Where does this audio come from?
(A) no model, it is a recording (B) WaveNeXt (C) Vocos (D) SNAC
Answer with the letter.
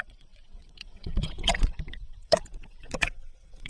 B